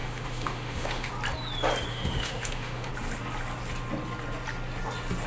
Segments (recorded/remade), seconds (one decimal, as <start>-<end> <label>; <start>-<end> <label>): 0.0-1.1 remade; 1.1-1.9 recorded; 1.9-2.9 remade; 2.9-5.3 recorded